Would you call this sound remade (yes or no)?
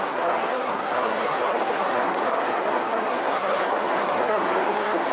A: yes